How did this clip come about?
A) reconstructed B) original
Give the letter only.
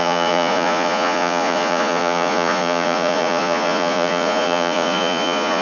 A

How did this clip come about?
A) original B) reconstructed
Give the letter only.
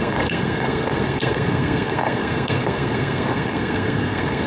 B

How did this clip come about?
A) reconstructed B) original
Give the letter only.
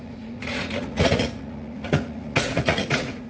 A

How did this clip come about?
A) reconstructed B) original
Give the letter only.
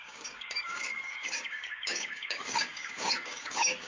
A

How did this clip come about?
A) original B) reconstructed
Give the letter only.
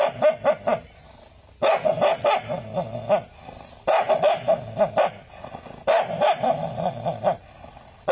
A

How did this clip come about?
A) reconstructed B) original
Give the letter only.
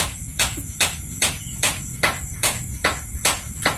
A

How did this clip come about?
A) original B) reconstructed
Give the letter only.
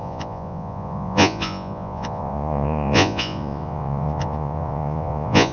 B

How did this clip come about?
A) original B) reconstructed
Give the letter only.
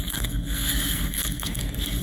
B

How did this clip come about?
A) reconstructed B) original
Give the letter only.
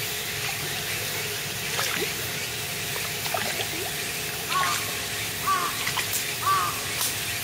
B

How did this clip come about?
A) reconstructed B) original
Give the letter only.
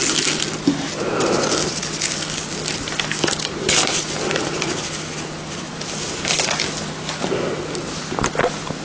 B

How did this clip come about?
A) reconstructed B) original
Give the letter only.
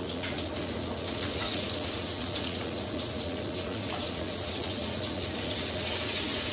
A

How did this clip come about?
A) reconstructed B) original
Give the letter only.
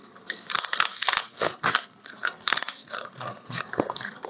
A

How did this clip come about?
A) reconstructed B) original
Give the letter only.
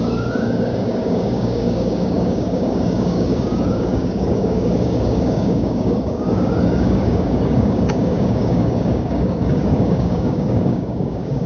A